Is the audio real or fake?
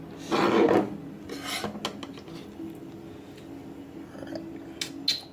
real